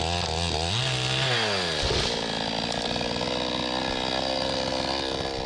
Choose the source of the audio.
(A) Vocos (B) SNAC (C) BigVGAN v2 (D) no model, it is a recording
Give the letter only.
D